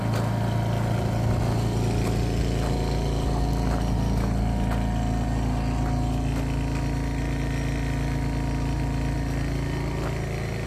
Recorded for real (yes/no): yes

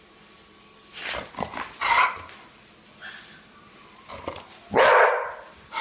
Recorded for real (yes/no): yes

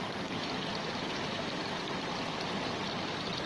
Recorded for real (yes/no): yes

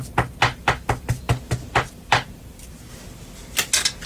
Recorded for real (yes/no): yes